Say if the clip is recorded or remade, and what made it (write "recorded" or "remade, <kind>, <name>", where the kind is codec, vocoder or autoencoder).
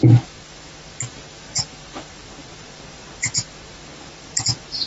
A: recorded